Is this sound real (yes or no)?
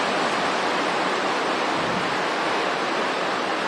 yes